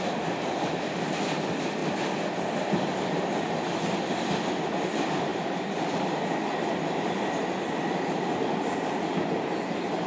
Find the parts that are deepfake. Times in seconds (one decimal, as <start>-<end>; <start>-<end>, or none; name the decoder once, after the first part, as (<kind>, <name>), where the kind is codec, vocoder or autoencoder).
none